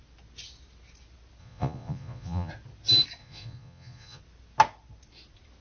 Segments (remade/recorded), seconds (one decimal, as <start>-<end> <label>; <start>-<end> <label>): 0.0-1.4 recorded; 1.4-2.5 remade; 2.5-3.2 recorded; 3.2-4.2 remade; 4.2-5.6 recorded